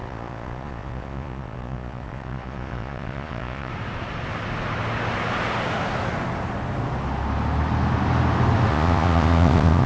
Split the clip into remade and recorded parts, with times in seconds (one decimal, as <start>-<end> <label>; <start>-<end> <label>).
0.0-3.7 remade; 3.7-8.7 recorded; 8.7-9.9 remade